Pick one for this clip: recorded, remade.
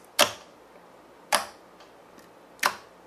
recorded